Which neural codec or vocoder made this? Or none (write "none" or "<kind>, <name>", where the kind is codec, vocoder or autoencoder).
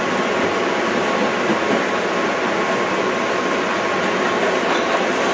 none